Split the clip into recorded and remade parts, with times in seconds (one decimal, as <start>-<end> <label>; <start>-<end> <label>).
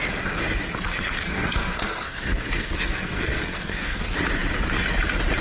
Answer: 0.0-0.9 recorded; 0.9-4.0 remade; 4.0-5.4 recorded